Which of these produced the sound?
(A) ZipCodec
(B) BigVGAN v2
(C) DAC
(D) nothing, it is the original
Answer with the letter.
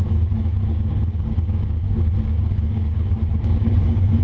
C